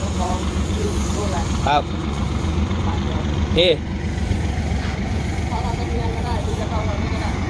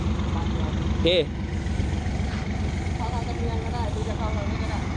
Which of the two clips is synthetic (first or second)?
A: first